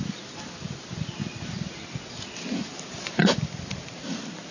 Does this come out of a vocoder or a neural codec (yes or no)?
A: no